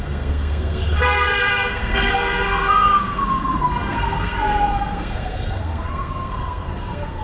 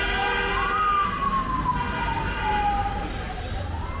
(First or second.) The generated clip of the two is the first